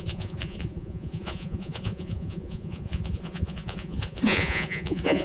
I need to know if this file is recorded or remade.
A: remade